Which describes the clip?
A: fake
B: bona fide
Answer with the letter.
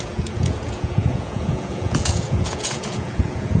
A